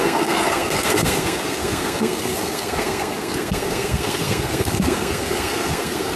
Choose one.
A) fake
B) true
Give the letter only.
A